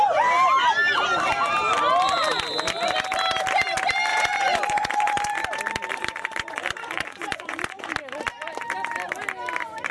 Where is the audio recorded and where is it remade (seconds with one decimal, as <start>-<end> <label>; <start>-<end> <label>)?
0.0-4.1 recorded; 4.1-5.2 remade; 5.2-5.9 recorded; 5.9-7.9 remade; 7.9-9.9 recorded